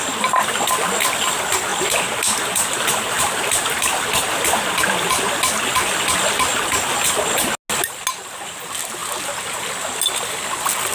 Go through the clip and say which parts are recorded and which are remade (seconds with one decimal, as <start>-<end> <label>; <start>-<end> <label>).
0.0-10.9 recorded